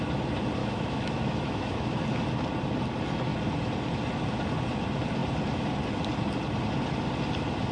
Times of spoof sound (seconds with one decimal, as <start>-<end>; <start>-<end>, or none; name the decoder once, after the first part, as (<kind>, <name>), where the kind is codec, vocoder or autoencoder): 0.6-2.0 (autoencoder, DAC-VAE)

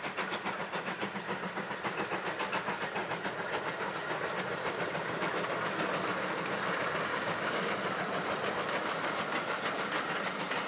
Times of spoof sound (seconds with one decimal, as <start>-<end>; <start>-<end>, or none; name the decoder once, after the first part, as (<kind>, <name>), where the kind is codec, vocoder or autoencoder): 7.1-7.7 (codec, DAC)

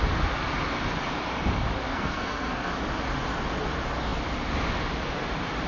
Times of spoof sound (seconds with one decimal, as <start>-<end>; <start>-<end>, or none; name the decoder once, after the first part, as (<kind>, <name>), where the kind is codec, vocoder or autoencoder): 1.8-2.7 (codec, SNAC)

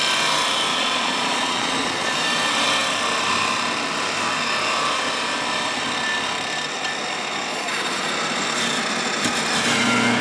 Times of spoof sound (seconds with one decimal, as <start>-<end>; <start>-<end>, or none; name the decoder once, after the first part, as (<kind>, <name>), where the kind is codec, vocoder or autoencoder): 0.7-2.1 (vocoder, Vocos); 7.5-8.1

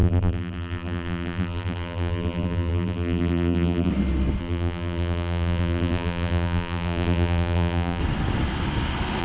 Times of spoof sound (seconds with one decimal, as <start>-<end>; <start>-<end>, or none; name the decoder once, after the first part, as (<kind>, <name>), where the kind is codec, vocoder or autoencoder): 0.0-3.9 (vocoder, BigVGAN v2); 4.4-8.0

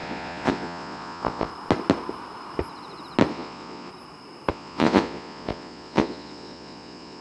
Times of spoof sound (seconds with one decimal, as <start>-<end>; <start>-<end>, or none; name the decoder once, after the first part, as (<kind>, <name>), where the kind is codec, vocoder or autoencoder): 0.0-1.5 (vocoder, Vocos); 3.3-3.9; 4.5-7.2

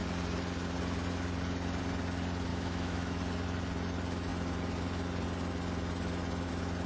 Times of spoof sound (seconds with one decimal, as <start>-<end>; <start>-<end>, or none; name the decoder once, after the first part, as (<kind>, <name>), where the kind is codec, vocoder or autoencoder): 2.5-3.2 (autoencoder, DAC-VAE)